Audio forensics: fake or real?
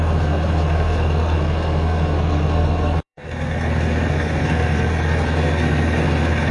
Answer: fake